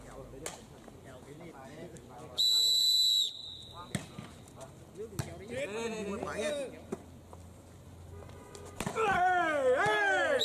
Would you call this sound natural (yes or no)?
yes